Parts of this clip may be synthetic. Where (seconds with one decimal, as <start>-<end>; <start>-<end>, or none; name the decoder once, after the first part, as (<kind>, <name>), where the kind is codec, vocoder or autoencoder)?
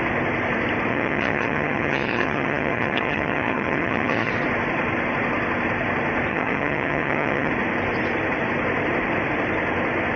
0.9-4.3 (vocoder, HiFi-GAN); 6.3-7.5